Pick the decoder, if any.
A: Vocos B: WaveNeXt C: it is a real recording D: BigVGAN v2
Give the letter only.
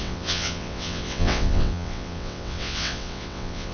B